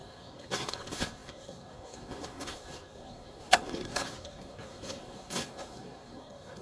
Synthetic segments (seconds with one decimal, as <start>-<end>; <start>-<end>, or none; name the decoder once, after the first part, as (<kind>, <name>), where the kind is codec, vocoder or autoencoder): 0.0-6.6 (codec, SNAC)